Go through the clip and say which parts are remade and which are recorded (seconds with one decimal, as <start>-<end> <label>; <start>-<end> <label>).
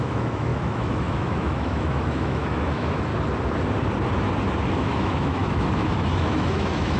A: 0.0-3.1 remade; 3.1-4.7 recorded; 4.7-7.0 remade